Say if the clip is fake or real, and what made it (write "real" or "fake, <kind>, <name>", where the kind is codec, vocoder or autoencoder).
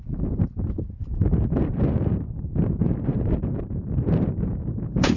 fake, vocoder, BigVGAN v2